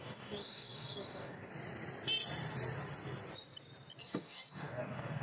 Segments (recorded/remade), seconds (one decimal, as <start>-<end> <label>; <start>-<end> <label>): 0.0-1.5 remade; 1.5-4.0 recorded; 4.0-5.2 remade

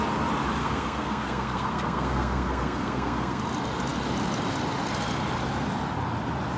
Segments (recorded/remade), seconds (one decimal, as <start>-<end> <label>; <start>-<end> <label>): 0.0-0.6 recorded; 0.6-3.4 remade; 3.4-6.6 recorded

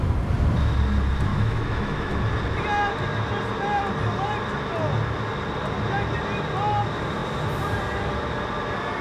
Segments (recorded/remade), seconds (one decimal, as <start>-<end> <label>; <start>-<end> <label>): 0.0-1.3 recorded; 1.3-2.2 remade; 2.2-9.0 recorded

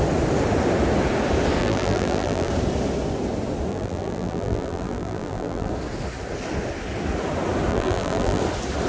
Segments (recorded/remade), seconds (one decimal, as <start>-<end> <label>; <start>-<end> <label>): 0.0-1.6 recorded; 1.6-2.5 remade; 2.5-3.7 recorded; 3.7-5.7 remade; 5.7-7.7 recorded; 7.7-8.4 remade; 8.4-8.9 recorded